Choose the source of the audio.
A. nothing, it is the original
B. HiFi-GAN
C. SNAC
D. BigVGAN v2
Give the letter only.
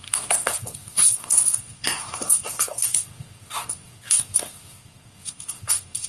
C